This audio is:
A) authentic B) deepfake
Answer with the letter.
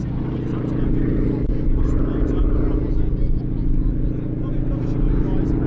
A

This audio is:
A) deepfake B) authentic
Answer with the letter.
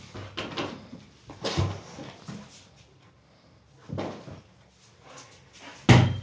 B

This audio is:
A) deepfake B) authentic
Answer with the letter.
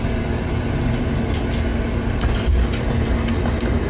B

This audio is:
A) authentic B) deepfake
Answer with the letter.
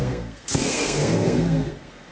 B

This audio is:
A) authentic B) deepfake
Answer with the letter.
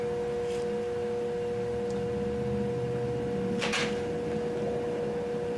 A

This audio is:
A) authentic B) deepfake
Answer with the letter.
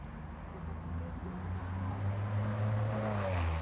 A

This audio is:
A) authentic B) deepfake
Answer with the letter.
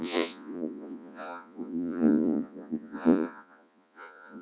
B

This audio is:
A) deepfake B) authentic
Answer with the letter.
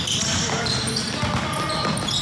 B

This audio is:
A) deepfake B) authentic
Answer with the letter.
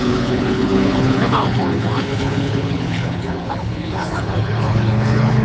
A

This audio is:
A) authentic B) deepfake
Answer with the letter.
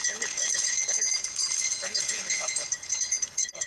B